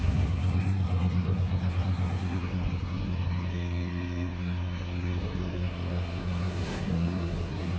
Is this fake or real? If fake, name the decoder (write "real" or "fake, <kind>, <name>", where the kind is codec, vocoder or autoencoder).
fake, codec, SNAC